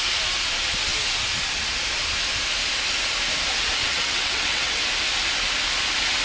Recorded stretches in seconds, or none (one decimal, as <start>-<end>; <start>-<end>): 0.0-3.8; 4.8-6.2

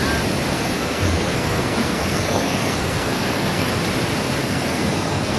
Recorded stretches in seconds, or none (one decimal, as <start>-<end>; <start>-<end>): 0.0-0.5; 3.7-4.4

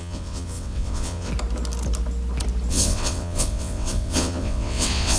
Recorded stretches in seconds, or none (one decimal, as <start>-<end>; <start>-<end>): 1.3-2.7

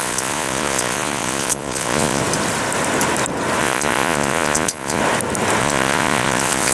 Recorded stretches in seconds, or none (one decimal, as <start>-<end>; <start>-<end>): 2.2-3.6; 5.0-5.6